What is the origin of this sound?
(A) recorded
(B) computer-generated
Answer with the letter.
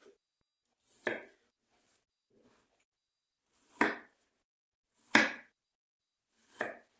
A